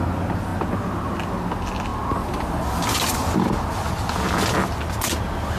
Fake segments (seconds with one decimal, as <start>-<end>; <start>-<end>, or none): none